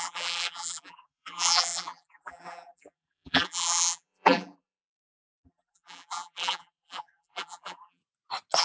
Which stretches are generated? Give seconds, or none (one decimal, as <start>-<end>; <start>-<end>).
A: 0.0-8.0